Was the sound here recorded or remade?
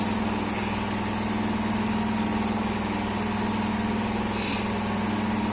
recorded